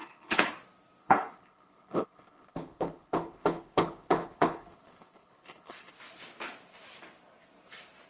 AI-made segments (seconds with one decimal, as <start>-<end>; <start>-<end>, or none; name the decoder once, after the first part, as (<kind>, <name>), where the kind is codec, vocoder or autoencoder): 0.0-0.5 (codec, HILCodec); 1.0-5.9